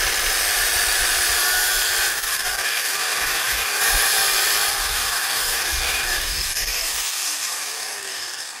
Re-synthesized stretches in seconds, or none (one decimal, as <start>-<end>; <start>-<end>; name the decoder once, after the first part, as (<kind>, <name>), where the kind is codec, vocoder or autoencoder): 2.1-3.8 (codec, DAC); 4.7-8.6

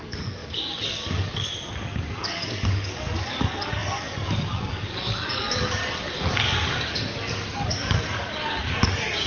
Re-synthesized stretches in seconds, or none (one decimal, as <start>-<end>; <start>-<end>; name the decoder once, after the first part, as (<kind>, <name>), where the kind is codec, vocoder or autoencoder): 0.0-1.5 (codec, DAC); 2.1-5.8; 6.3-9.3